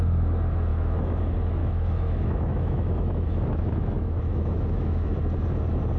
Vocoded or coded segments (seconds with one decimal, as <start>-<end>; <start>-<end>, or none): 0.7-1.2; 1.6-5.2